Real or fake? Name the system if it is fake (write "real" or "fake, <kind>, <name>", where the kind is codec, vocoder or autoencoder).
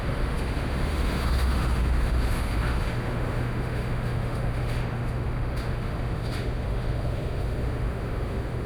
fake, autoencoder, DAC-VAE